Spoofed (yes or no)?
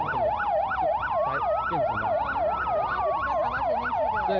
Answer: no